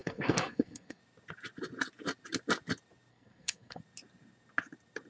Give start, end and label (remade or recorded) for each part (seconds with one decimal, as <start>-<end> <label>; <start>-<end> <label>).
0.0-1.0 remade; 1.0-3.1 recorded; 3.1-3.8 remade; 3.8-5.1 recorded